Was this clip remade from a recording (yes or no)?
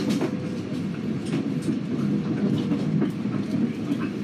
no